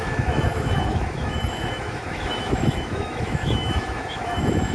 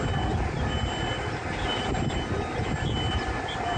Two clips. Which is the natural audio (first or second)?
second